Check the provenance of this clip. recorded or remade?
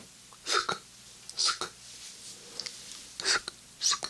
recorded